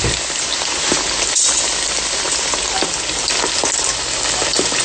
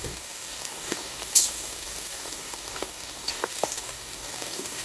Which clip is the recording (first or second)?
first